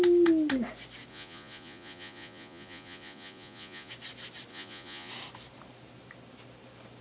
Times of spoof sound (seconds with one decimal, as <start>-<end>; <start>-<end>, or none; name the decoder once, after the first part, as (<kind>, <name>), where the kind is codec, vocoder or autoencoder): 1.1-3.9 (vocoder, Vocos); 4.5-5.1